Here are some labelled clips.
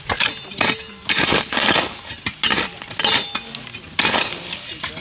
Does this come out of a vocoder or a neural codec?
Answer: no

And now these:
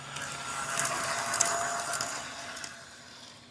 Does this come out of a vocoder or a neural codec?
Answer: no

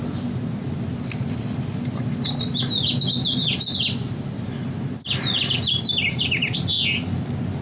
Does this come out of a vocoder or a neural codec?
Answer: no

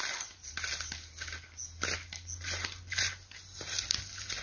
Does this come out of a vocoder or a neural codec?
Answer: no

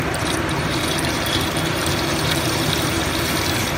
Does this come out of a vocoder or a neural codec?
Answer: yes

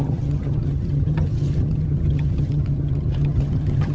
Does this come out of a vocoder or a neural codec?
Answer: yes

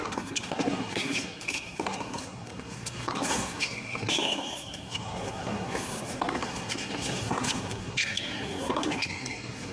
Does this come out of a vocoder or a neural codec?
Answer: yes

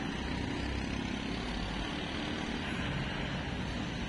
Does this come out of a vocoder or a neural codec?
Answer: no